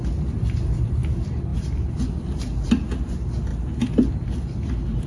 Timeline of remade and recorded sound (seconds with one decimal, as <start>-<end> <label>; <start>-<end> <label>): 0.0-5.1 recorded